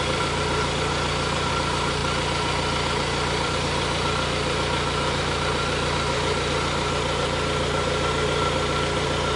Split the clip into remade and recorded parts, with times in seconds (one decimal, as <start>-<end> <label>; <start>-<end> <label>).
0.0-9.4 remade